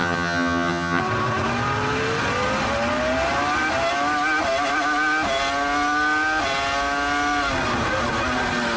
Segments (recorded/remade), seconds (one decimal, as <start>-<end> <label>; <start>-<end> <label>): 0.0-1.0 remade; 1.0-8.8 recorded